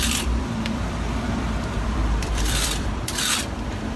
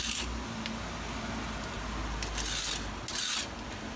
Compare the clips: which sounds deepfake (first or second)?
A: first